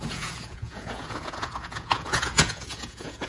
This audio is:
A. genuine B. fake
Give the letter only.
B